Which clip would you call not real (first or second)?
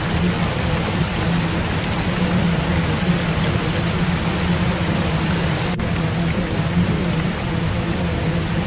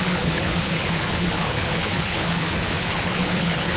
second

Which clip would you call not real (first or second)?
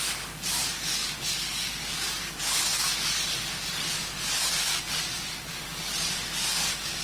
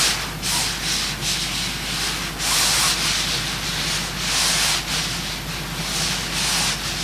first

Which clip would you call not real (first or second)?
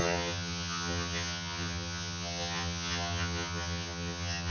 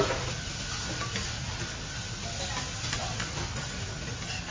first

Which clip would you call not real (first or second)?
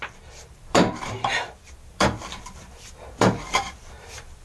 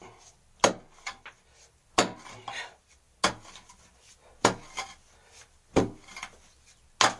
first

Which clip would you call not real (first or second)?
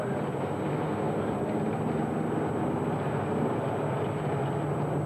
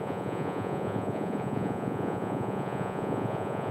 second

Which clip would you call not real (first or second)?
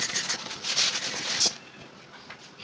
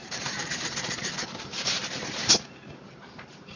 second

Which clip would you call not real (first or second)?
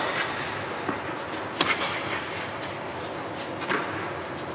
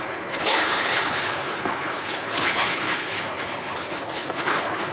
second